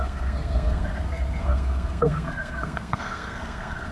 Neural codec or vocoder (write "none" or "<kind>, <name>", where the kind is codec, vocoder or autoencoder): codec, SNAC